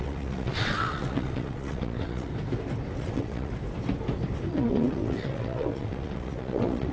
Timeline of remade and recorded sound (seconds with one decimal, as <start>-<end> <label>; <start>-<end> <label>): 0.0-2.3 remade; 2.3-3.0 recorded; 3.0-3.5 remade; 3.5-4.5 recorded; 4.5-6.9 remade